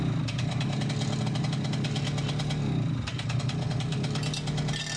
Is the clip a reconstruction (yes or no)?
no